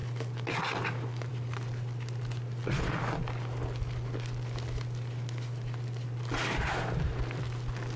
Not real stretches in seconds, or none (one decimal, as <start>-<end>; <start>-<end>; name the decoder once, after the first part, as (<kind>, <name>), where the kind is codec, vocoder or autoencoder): none